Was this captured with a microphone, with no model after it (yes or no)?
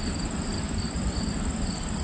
yes